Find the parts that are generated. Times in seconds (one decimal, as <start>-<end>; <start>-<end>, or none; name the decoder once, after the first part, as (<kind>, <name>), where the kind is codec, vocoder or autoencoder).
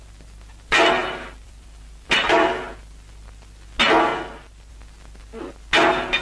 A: 1.0-2.7 (vocoder, BigVGAN v2); 4.1-4.7